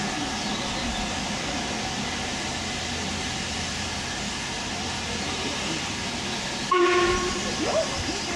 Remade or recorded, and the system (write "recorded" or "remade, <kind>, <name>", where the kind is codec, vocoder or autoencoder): recorded